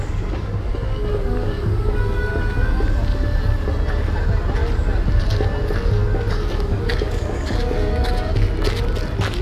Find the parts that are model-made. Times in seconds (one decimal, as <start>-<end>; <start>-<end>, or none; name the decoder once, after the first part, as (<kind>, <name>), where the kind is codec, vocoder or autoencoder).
0.0-2.3 (codec, DAC); 6.3-8.3